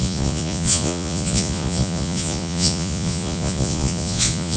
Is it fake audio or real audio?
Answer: fake